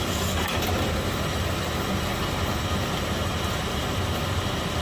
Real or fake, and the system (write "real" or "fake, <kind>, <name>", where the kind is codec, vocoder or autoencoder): real